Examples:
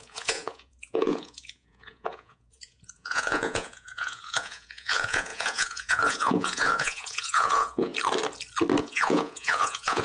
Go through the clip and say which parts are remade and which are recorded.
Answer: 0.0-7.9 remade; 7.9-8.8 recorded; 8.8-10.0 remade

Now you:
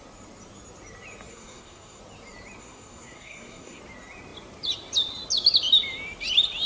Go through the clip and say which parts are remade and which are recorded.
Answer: 0.0-1.3 recorded; 1.3-2.0 remade; 2.0-2.6 recorded; 2.6-3.8 remade; 3.8-6.7 recorded

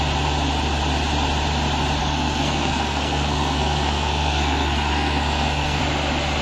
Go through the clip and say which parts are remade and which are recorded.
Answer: 0.0-2.0 recorded; 2.0-5.8 remade; 5.8-6.4 recorded

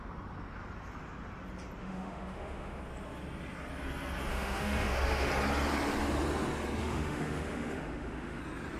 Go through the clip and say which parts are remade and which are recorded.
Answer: 0.0-1.8 recorded; 1.8-2.8 remade; 2.8-4.3 recorded; 4.3-5.3 remade; 5.3-6.8 recorded; 6.8-8.4 remade; 8.4-8.8 recorded

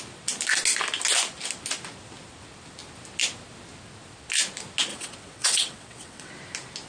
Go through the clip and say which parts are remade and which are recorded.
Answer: 0.0-4.9 recorded; 4.9-6.3 remade; 6.3-6.9 recorded

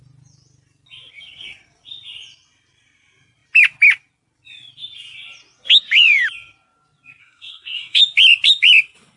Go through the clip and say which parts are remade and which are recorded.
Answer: 0.0-7.2 recorded; 7.2-8.0 remade; 8.0-9.2 recorded